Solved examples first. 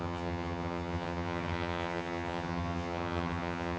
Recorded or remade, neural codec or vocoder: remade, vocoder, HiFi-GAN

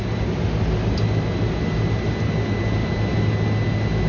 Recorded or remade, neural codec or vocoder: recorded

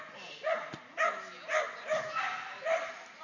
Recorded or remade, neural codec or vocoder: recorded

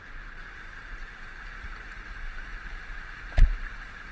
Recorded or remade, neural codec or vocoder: recorded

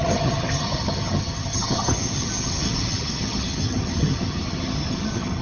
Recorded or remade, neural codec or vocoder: remade, vocoder, HiFi-GAN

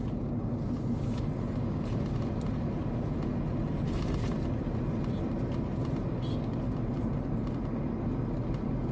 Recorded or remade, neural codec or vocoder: recorded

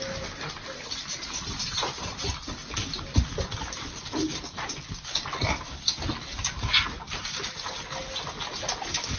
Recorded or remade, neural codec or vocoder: recorded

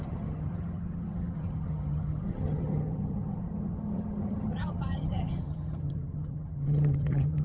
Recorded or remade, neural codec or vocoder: remade, vocoder, HiFi-GAN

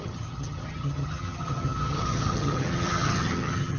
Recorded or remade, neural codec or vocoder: remade, vocoder, HiFi-GAN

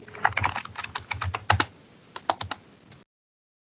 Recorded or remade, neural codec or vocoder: recorded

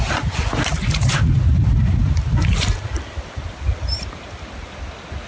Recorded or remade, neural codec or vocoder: recorded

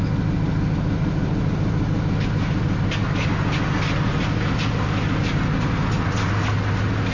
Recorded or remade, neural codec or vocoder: recorded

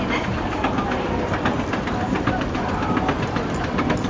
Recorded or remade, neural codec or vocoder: recorded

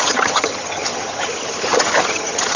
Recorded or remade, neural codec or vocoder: remade, vocoder, HiFi-GAN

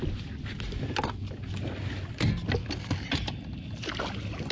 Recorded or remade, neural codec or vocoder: recorded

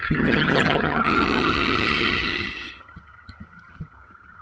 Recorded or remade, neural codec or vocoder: remade, vocoder, HiFi-GAN